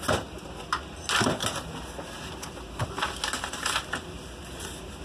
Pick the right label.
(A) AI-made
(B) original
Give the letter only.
B